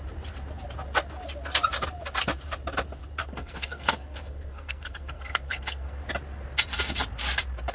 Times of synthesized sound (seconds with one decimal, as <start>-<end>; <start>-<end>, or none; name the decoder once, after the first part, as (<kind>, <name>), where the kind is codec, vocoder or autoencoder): 3.2-6.0 (codec, SNAC)

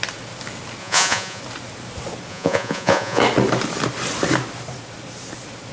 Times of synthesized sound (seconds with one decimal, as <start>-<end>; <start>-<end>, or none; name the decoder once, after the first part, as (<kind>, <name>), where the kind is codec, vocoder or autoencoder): 0.8-1.4 (vocoder, Vocos); 2.3-3.2

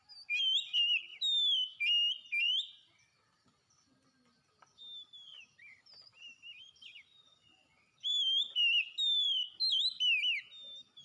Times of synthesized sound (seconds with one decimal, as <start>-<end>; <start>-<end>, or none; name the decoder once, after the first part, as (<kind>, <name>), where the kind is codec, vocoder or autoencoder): 5.3-8.5 (vocoder, BigVGAN v2)

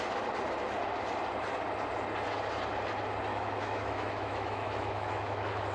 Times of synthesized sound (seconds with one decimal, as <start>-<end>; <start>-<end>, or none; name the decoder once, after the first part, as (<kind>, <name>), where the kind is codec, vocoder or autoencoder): 3.3-5.7 (autoencoder, DAC-VAE)

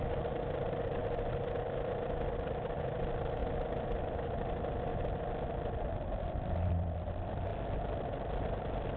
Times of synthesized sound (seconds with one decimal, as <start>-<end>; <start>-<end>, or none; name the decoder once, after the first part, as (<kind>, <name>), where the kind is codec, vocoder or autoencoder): 0.0-1.0 (vocoder, BigVGAN v2); 1.9-3.4; 4.0-4.9; 6.3-7.5

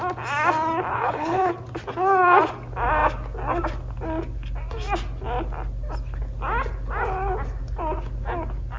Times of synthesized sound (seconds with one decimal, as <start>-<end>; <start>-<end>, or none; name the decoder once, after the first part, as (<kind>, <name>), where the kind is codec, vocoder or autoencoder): 0.9-1.5 (codec, HILCodec)

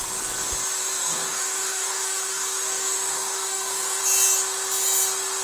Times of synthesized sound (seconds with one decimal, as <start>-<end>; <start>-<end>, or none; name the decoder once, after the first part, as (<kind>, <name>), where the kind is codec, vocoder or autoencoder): 0.8-4.0 (codec, DAC)

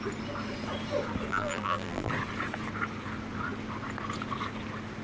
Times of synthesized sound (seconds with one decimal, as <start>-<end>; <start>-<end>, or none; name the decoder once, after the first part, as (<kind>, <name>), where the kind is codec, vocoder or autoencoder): 1.3-2.1 (vocoder, BigVGAN v2)